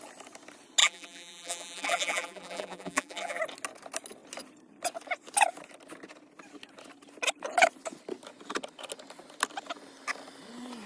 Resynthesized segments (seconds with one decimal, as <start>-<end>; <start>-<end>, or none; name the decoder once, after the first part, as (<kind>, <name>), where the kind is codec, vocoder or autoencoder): 0.8-3.4 (vocoder, BigVGAN v2)